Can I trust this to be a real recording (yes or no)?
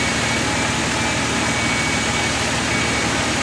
yes